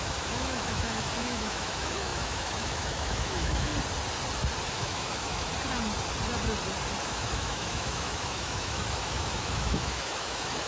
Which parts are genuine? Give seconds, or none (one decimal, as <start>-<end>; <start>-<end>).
3.7-4.7; 5.5-7.0